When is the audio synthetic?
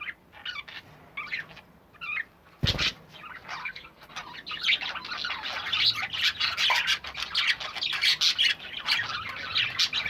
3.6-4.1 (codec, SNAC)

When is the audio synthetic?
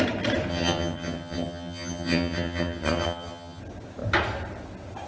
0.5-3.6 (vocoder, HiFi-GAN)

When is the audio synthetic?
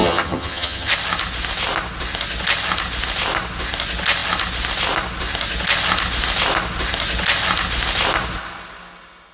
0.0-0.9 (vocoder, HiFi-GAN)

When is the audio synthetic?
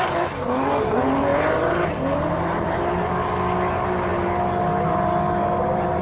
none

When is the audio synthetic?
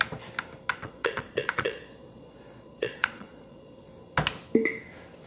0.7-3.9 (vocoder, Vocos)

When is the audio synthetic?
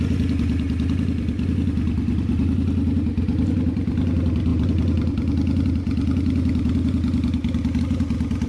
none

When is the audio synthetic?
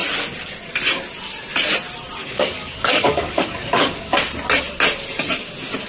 2.2-4.2 (codec, DAC)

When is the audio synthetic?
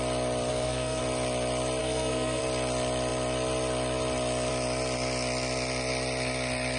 0.5-1.0 (codec, SNAC); 1.8-2.4